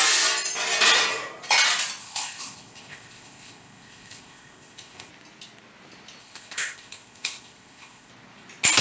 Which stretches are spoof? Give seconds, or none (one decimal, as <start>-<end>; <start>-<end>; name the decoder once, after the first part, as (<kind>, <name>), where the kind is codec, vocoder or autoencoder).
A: 2.0-5.1 (codec, ZipCodec); 6.2-8.1